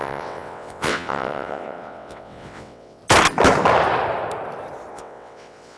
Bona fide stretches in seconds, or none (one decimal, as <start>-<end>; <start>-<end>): 3.0-4.9